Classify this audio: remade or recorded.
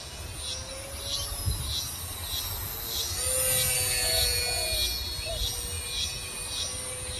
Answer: recorded